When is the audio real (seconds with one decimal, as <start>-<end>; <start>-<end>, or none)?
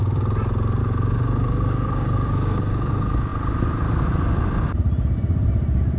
0.0-0.8; 2.9-6.0